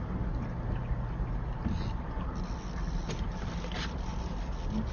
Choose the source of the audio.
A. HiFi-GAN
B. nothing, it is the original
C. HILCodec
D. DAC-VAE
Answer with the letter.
B